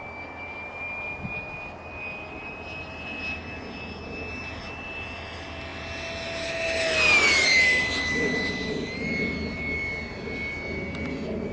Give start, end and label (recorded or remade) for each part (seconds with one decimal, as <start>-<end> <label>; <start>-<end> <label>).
0.0-11.5 recorded